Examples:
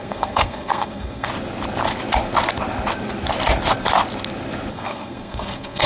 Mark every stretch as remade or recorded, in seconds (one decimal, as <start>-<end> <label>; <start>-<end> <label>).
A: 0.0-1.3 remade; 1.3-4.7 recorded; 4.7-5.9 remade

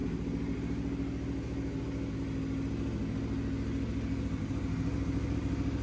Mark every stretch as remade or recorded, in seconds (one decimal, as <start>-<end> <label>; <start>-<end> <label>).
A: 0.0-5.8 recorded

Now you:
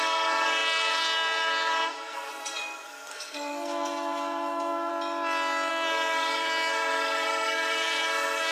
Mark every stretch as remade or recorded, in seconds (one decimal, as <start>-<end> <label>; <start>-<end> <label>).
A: 0.0-4.9 remade; 4.9-5.7 recorded; 5.7-8.5 remade